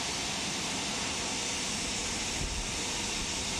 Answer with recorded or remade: recorded